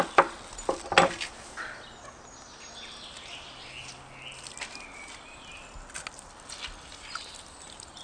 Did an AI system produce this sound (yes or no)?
no